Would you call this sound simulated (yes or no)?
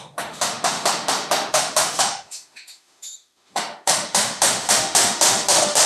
yes